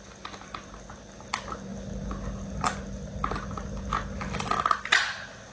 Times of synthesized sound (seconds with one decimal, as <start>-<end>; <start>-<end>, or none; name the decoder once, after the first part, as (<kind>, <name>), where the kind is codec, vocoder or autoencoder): none